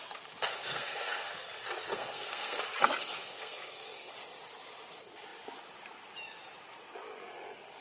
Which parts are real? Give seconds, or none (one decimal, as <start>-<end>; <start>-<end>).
0.0-0.5; 1.5-1.9; 2.6-3.0; 4.1-7.8